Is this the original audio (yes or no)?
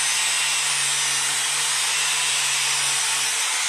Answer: yes